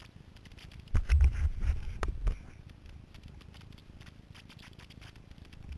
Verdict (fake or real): fake